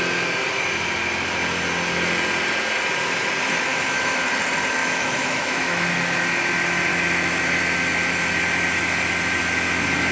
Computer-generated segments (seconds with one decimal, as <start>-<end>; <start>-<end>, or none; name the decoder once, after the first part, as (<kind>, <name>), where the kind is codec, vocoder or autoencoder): 3.7-4.2 (autoencoder, DAC-VAE); 4.8-5.9; 6.9-7.4